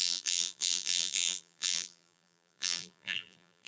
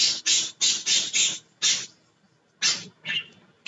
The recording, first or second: second